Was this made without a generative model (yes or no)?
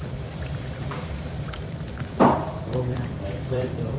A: no